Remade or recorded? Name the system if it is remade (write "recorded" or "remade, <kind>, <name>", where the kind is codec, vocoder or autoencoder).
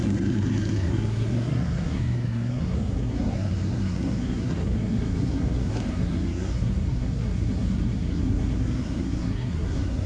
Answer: remade, codec, SNAC